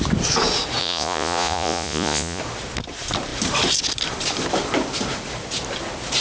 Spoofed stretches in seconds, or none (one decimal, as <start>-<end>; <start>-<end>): 0.8-2.4